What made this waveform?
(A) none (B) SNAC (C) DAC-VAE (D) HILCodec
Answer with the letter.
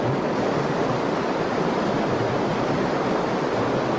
A